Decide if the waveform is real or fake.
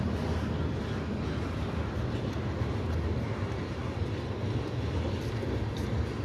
real